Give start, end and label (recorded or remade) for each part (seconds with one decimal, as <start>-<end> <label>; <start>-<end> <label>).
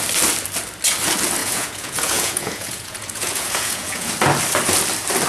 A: 0.0-1.4 recorded; 1.4-4.1 remade; 4.1-5.3 recorded